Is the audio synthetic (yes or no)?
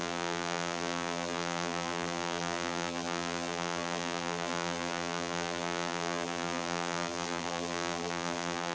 yes